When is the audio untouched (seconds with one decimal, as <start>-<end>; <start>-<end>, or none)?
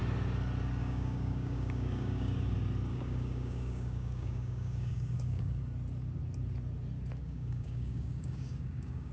0.0-0.8; 2.4-2.9; 5.6-7.2